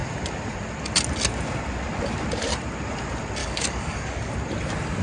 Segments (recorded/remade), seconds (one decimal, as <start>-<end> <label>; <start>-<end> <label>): 0.0-3.4 recorded; 3.4-4.3 remade; 4.3-5.0 recorded